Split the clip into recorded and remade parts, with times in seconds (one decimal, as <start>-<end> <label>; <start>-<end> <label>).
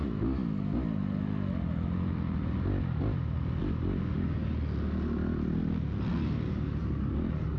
0.0-7.6 recorded